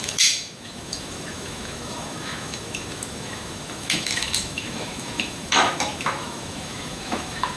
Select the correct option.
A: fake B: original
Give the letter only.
A